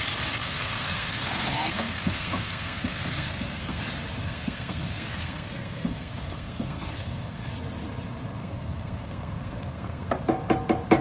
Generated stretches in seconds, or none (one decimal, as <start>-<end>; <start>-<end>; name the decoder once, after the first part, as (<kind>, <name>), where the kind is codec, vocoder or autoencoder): 0.4-3.8 (codec, SNAC); 4.2-7.5; 8.4-10.1